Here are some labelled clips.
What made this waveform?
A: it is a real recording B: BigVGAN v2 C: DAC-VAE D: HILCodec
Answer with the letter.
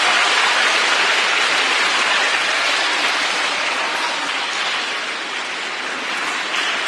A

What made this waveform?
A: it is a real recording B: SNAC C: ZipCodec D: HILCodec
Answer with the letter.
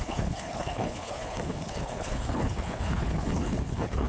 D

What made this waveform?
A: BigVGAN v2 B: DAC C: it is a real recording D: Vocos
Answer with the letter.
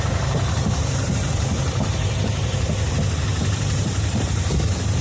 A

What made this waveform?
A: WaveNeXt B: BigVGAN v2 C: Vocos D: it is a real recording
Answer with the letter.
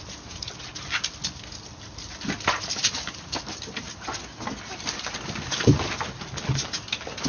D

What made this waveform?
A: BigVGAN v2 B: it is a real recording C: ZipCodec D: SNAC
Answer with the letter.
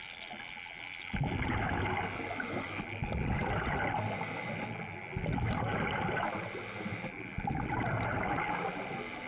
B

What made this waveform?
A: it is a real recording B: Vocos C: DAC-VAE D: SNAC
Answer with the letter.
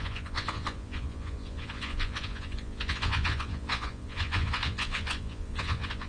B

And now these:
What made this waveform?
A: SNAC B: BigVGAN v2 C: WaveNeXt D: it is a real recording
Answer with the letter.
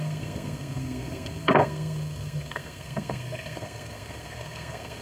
A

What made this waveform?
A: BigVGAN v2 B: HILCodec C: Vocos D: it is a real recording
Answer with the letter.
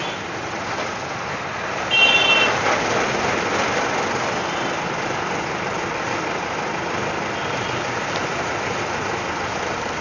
D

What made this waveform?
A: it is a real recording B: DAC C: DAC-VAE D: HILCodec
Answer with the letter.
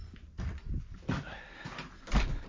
A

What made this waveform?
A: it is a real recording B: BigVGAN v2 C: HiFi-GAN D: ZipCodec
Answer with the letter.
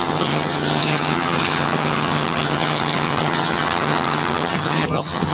C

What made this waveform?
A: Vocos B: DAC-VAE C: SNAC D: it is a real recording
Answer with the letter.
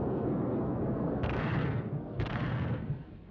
C